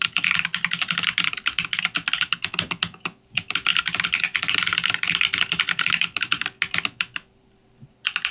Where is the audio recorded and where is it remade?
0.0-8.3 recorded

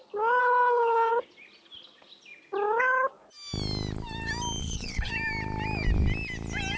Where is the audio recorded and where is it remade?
0.0-0.4 recorded; 0.4-1.1 remade; 1.1-4.6 recorded; 4.6-5.1 remade; 5.1-6.8 recorded

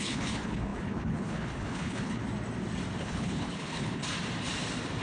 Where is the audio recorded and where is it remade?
0.0-2.2 remade; 2.2-3.0 recorded; 3.0-4.0 remade; 4.0-5.0 recorded

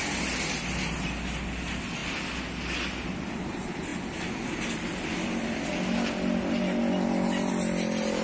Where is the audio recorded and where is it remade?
0.0-8.2 recorded

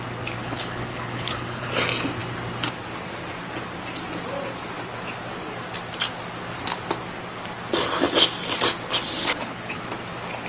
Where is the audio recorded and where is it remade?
0.0-0.4 recorded; 0.4-1.7 remade; 1.7-9.2 recorded; 9.2-9.8 remade; 9.8-10.5 recorded